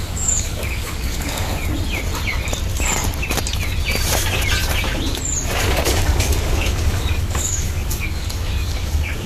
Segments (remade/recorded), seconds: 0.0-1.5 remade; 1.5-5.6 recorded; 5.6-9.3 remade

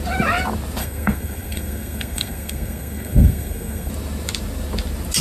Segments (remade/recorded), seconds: 0.0-0.8 recorded; 0.8-3.9 remade; 3.9-5.2 recorded

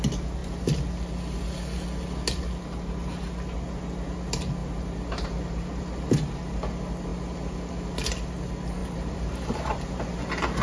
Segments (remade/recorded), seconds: 0.0-4.6 recorded; 4.6-6.0 remade; 6.0-8.8 recorded; 8.8-10.1 remade; 10.1-10.6 recorded

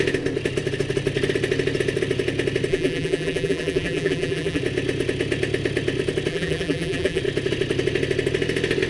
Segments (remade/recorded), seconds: 0.0-2.7 recorded; 2.7-4.6 remade; 4.6-6.3 recorded; 6.3-7.2 remade; 7.2-8.9 recorded

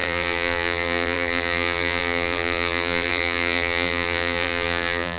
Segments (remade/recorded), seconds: 0.0-5.2 remade

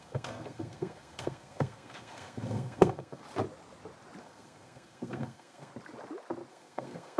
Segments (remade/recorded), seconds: 0.0-3.2 remade; 3.2-4.2 recorded; 4.2-5.7 remade; 5.7-6.5 recorded; 6.5-7.2 remade

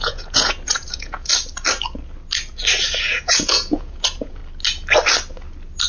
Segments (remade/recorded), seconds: 0.0-1.3 remade; 1.3-3.0 recorded; 3.0-4.4 remade; 4.4-5.9 recorded